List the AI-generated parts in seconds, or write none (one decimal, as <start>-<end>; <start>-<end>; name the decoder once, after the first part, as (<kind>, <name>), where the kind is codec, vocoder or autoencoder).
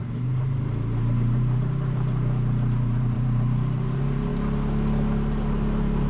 0.0-4.3 (vocoder, BigVGAN v2)